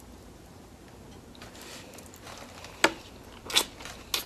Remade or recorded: recorded